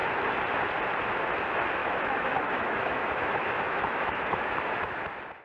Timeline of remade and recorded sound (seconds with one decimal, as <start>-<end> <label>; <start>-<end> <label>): 0.0-1.8 recorded; 1.8-5.0 remade; 5.0-5.4 recorded